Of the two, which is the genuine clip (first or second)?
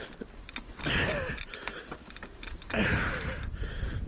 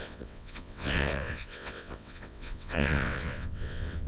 first